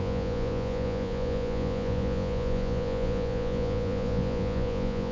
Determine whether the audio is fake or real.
fake